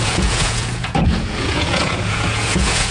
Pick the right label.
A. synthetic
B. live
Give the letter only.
A